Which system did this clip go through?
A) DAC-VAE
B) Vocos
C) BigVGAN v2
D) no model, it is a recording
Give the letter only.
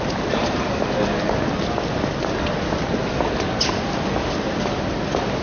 D